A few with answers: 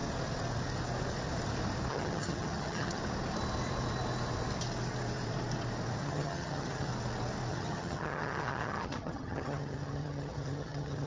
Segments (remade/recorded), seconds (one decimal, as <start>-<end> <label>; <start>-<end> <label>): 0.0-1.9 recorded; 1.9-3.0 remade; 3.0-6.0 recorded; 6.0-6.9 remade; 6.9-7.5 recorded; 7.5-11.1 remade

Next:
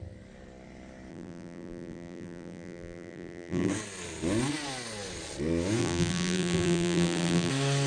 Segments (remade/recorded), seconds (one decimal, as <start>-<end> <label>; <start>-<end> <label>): 0.0-1.1 recorded; 1.1-3.7 remade; 3.7-5.8 recorded; 5.8-7.5 remade; 7.5-7.9 recorded

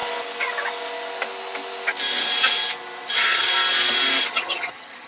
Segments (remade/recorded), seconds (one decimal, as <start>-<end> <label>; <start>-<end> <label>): 0.0-3.1 recorded; 3.1-3.5 remade; 3.5-4.3 recorded; 4.3-5.1 remade

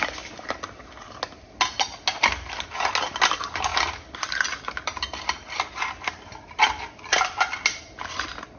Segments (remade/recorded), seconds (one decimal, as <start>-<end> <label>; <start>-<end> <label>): 0.0-3.7 recorded; 3.7-7.8 remade; 7.8-8.6 recorded

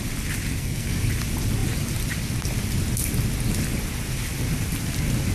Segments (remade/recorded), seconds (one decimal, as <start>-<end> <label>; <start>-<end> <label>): 0.0-0.5 recorded; 0.5-1.1 remade; 1.1-5.3 recorded

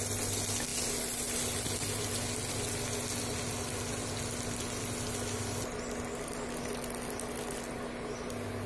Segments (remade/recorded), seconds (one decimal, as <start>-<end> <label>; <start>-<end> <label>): 0.0-8.7 recorded